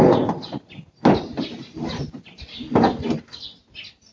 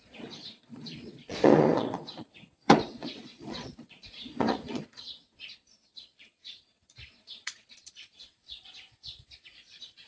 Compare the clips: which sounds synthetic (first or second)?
second